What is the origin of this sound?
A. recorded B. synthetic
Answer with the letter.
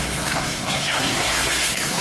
B